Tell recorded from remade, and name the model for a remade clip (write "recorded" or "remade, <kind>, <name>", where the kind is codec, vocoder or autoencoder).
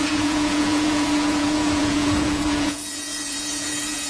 remade, vocoder, Vocos